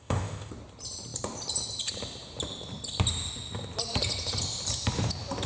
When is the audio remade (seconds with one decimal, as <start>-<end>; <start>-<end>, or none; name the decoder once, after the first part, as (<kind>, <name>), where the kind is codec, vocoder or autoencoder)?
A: 0.0-0.5 (codec, ZipCodec)